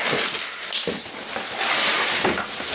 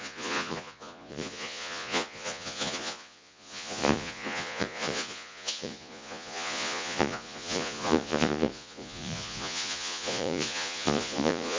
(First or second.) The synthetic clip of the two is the second